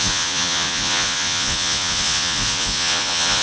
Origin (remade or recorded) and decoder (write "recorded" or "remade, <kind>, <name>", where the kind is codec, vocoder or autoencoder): remade, vocoder, Vocos